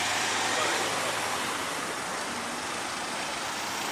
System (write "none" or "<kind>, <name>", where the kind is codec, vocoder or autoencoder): none